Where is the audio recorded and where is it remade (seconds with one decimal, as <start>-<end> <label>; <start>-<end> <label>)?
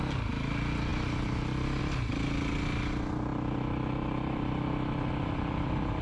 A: 0.0-6.0 recorded